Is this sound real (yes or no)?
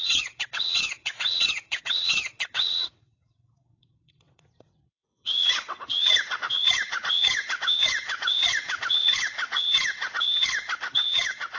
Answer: no